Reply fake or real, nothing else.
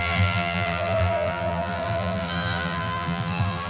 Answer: fake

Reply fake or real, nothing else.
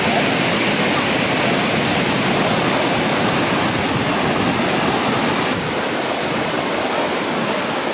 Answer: fake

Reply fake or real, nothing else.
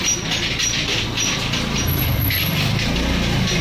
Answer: real